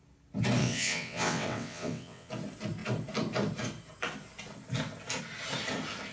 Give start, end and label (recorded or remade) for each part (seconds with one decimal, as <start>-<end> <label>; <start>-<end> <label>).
0.0-0.6 recorded; 0.6-2.3 remade; 2.3-6.1 recorded